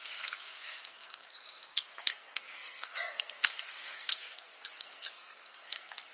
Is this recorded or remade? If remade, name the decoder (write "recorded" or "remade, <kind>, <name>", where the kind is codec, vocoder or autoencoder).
remade, codec, SNAC